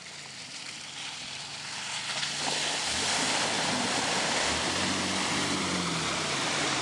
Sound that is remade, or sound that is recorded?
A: remade